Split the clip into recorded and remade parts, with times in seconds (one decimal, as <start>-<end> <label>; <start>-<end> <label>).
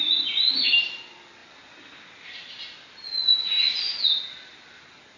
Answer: 0.0-5.2 recorded